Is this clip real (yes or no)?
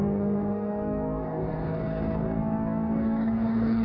no